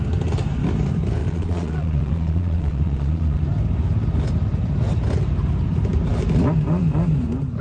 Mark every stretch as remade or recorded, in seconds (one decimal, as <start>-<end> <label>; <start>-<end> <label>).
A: 0.0-1.2 recorded; 1.2-3.4 remade; 3.4-7.6 recorded